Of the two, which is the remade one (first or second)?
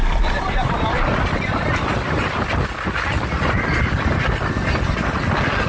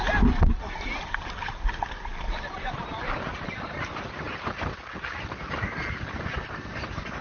second